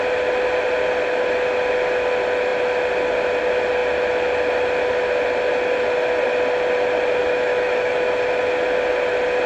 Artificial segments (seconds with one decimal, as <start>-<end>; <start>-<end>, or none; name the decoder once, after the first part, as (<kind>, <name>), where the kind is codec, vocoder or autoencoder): 7.2-8.1 (autoencoder, DAC-VAE)